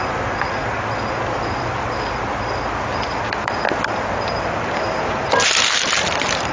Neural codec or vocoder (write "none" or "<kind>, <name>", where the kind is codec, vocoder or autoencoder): none